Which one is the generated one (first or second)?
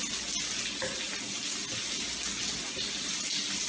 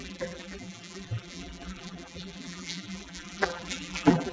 second